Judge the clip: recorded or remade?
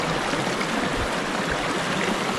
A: recorded